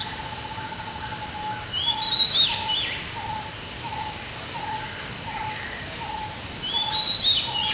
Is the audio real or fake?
real